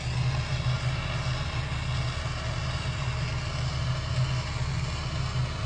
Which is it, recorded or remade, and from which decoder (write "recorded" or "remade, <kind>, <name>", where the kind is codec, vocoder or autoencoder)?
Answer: recorded